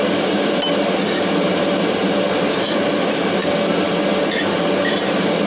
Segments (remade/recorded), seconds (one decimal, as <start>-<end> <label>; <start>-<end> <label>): 0.0-5.5 recorded